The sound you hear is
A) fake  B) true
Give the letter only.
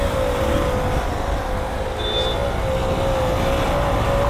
B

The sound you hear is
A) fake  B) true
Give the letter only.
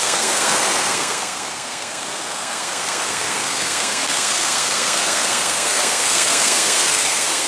A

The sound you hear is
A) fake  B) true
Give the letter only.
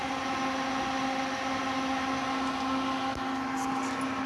B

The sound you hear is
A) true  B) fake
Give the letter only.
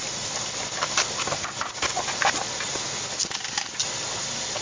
A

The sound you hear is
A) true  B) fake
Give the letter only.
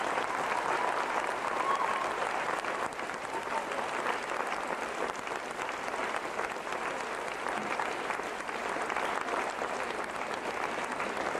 A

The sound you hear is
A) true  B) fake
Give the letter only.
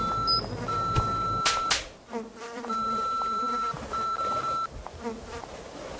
A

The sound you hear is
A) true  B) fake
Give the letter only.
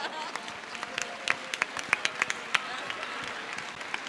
A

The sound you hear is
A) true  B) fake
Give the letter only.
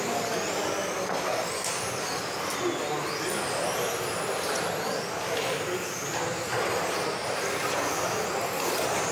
A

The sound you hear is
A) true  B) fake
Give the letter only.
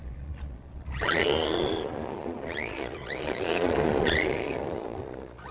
B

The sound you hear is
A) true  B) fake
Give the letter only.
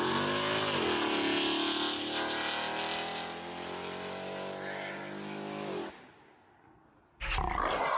A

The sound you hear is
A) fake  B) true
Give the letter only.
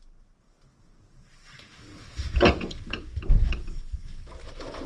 B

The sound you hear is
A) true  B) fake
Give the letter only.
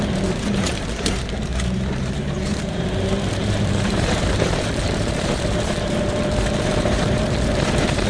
B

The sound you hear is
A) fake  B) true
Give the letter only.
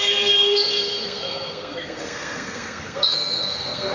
A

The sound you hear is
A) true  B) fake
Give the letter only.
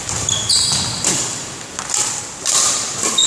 A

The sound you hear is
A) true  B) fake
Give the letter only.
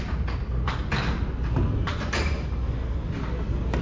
A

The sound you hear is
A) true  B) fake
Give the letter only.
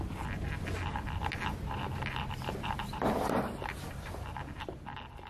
A